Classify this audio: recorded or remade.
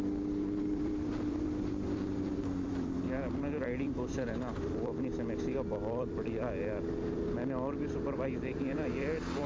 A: remade